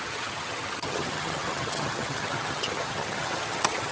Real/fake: fake